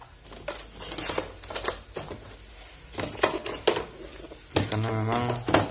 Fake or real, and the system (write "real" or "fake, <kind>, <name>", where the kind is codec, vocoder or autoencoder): real